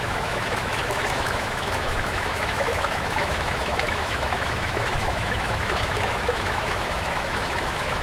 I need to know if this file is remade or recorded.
remade